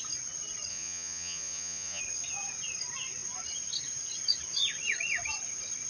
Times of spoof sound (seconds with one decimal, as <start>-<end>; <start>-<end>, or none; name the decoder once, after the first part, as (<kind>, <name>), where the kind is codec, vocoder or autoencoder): 0.7-2.0 (vocoder, Vocos)